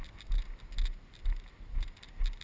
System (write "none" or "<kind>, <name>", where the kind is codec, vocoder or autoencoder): none